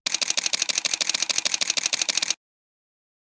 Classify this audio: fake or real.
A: real